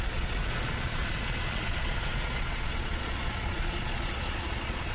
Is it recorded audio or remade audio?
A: remade